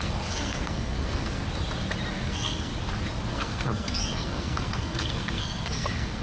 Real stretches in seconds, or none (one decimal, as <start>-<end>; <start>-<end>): 1.4-2.1; 2.7-3.3